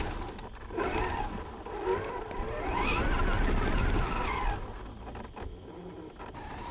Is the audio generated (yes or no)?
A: no